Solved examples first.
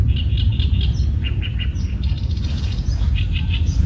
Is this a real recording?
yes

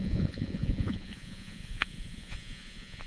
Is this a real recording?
no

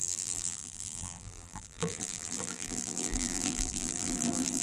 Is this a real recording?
no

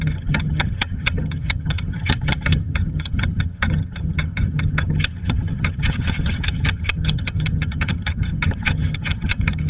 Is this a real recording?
no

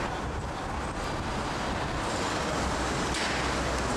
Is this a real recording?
yes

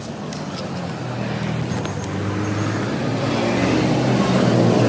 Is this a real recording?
yes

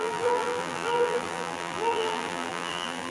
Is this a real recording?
no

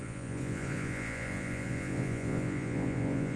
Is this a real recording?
no